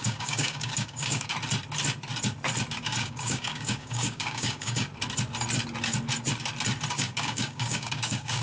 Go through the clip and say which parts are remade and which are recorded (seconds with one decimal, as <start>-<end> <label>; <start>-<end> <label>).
0.0-1.3 remade; 1.3-2.8 recorded; 2.8-4.9 remade; 4.9-6.9 recorded; 6.9-8.4 remade